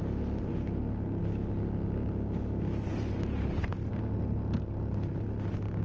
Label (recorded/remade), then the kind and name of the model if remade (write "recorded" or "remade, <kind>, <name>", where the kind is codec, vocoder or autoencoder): recorded